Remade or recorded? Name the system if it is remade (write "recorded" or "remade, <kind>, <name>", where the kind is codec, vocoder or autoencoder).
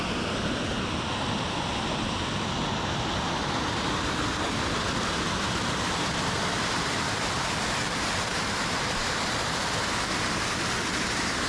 recorded